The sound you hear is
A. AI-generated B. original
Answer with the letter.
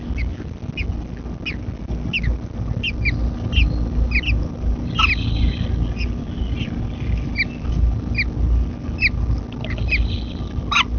B